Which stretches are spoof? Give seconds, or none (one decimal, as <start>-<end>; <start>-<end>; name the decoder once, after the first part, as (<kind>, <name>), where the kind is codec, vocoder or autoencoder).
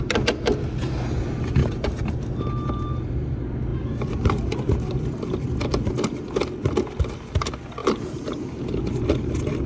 1.6-2.2 (vocoder, BigVGAN v2); 7.8-8.6